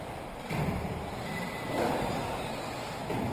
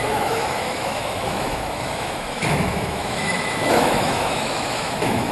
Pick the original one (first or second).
first